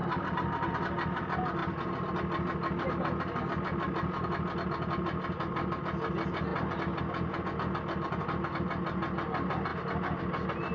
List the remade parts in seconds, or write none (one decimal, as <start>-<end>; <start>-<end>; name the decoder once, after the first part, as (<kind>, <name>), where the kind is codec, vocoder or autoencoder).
none